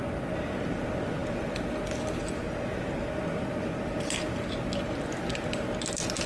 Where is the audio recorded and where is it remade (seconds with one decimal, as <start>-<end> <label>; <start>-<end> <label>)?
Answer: 0.0-6.3 recorded